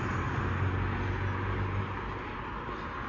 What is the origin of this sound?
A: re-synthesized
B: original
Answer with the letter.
B